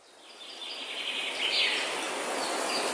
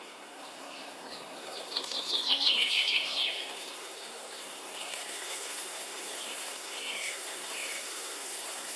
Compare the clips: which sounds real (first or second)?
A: first